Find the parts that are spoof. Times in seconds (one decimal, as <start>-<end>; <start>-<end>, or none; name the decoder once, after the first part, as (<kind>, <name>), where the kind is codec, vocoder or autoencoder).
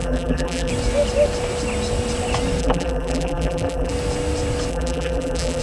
0.0-0.7 (vocoder, BigVGAN v2); 2.6-3.9; 4.7-5.6